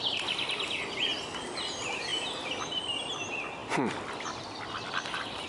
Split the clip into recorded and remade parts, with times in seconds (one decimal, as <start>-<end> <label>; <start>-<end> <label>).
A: 0.0-5.5 recorded